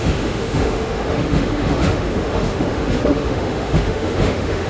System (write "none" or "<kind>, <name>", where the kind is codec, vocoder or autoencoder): autoencoder, DAC-VAE